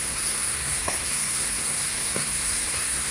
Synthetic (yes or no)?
yes